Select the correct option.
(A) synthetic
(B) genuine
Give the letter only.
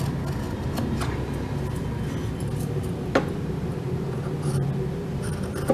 B